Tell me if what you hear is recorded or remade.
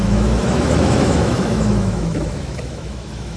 remade